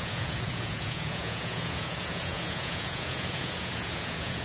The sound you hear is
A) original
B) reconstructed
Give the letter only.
B